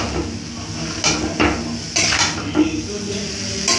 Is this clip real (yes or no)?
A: yes